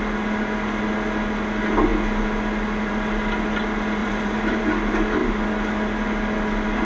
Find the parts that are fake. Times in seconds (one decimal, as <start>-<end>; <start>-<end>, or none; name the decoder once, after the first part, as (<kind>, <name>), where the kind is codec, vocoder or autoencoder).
4.0-4.7 (vocoder, BigVGAN v2)